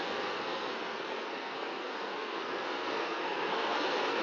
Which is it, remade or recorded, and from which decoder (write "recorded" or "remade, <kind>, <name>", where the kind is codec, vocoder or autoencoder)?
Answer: remade, codec, SNAC